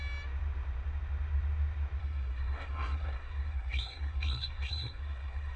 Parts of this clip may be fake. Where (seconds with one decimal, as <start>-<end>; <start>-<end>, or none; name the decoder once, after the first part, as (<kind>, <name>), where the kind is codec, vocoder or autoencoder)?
2.0-5.6 (codec, SNAC)